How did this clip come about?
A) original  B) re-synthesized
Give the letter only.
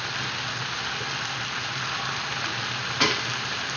A